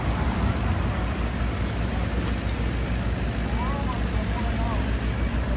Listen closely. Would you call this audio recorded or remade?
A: recorded